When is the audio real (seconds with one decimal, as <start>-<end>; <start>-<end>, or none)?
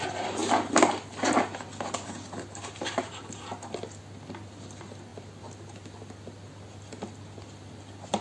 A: 0.0-8.2